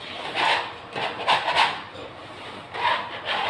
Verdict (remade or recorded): recorded